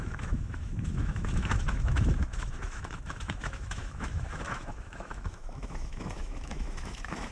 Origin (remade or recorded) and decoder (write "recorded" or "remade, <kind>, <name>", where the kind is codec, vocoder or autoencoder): remade, autoencoder, DAC-VAE